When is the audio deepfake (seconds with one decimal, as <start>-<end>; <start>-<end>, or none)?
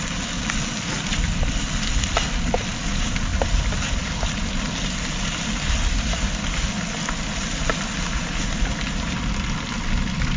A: none